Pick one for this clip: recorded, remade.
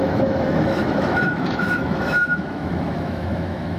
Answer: remade